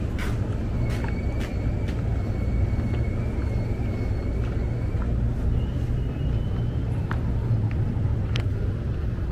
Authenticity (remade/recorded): recorded